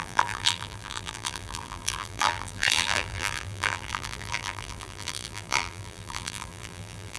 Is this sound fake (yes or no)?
yes